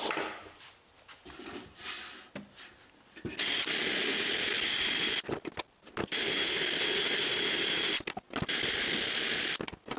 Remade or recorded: recorded